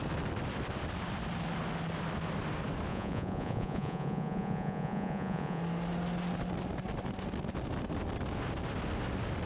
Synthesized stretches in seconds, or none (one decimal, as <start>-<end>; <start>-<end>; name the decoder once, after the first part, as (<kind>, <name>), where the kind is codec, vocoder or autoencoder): 2.9-5.6 (vocoder, Vocos)

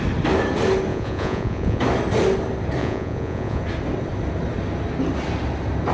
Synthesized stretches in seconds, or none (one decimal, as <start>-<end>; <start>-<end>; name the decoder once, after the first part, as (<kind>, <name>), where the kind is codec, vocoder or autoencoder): 0.9-1.8 (vocoder, Vocos); 2.8-3.6